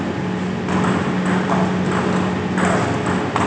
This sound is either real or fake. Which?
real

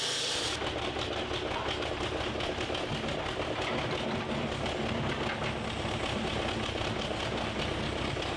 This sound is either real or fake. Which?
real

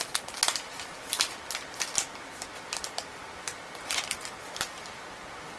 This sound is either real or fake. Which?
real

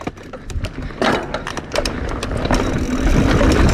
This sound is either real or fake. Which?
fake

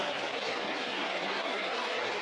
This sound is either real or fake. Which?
fake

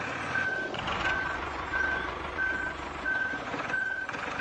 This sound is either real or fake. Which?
fake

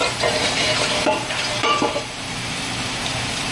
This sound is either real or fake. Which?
fake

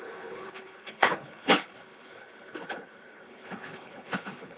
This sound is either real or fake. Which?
fake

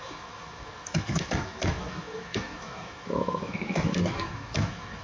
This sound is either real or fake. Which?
fake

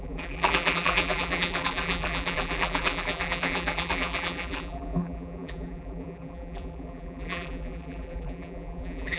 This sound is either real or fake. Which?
fake